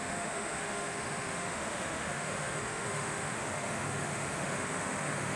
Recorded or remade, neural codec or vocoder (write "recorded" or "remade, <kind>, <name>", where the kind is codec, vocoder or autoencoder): remade, autoencoder, DAC-VAE